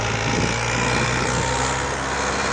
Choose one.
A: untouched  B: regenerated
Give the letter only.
A